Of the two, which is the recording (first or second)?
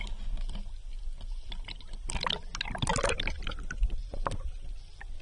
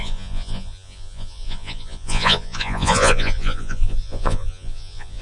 first